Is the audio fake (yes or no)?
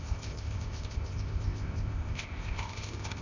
yes